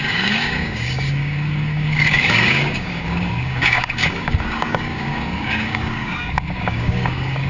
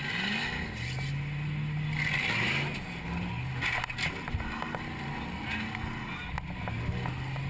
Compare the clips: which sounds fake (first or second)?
first